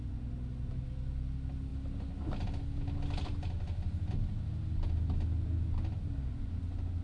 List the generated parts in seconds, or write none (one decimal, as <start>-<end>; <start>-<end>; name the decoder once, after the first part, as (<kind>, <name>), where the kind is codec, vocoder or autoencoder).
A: none